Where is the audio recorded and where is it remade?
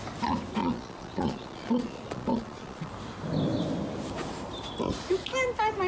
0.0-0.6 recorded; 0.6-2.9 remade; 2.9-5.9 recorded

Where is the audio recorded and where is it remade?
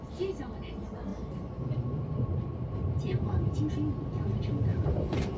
0.0-1.1 recorded; 1.1-3.5 remade; 3.5-4.7 recorded; 4.7-5.4 remade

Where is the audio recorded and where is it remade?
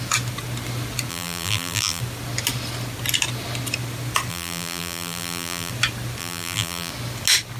0.0-1.1 recorded; 1.1-2.0 remade; 2.0-4.3 recorded; 4.3-5.7 remade; 5.7-6.2 recorded; 6.2-6.9 remade; 6.9-7.6 recorded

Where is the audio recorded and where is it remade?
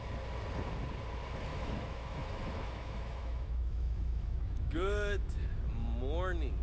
0.0-1.5 recorded; 1.5-5.5 remade; 5.5-6.6 recorded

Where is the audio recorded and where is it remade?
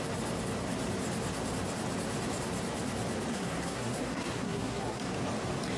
0.0-3.3 recorded; 3.3-5.1 remade; 5.1-5.8 recorded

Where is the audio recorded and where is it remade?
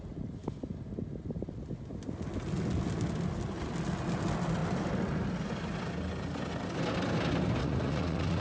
0.0-7.6 recorded; 7.6-8.4 remade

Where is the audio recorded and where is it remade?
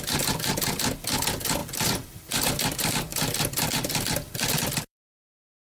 0.0-1.6 recorded; 1.6-2.3 remade; 2.3-3.1 recorded; 3.1-5.1 remade; 5.1-5.8 recorded